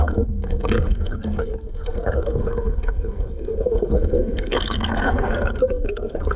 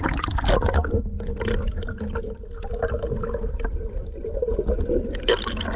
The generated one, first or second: first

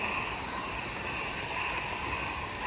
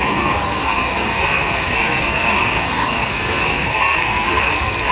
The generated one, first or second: second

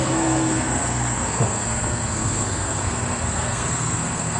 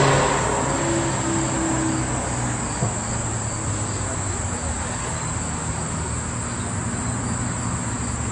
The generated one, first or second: first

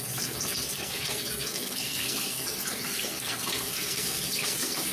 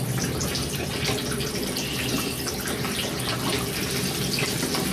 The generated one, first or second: first